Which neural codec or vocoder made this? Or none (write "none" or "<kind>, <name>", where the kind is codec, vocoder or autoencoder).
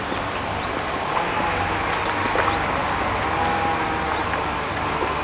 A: none